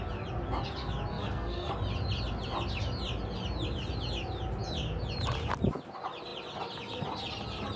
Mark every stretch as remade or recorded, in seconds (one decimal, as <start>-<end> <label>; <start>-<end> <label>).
0.0-1.1 recorded; 1.1-1.7 remade; 1.7-7.8 recorded